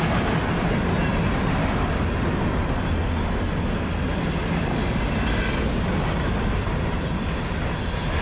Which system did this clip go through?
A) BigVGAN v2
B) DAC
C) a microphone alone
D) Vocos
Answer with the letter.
C